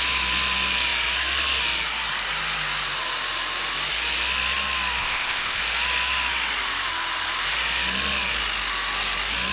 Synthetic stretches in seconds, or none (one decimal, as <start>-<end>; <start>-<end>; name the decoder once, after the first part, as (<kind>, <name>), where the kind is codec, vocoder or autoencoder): 5.0-5.6 (codec, ZipCodec)

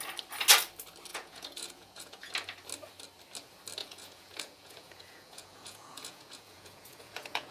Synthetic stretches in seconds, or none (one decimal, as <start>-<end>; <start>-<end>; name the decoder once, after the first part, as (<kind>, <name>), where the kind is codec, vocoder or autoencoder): 1.1-2.3 (vocoder, Vocos); 3.8-7.5